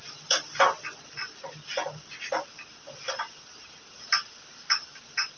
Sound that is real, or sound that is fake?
real